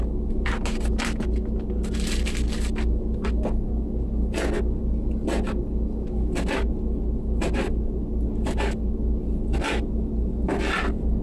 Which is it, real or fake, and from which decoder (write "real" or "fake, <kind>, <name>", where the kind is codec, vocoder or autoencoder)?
real